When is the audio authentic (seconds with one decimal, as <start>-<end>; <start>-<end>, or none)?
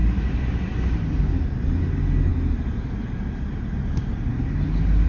0.0-5.1